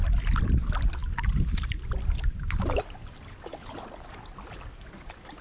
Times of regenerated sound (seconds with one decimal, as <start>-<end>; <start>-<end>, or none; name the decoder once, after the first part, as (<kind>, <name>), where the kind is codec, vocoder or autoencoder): none